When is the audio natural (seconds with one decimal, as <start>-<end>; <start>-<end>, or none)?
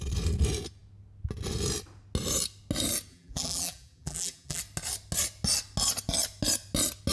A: 0.0-3.1; 4.6-7.1